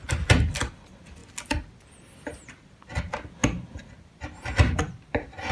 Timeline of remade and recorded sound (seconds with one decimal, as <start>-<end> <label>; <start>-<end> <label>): 0.0-5.5 recorded